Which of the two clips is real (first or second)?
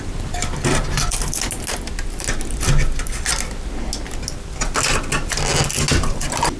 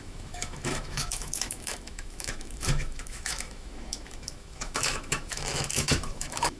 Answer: first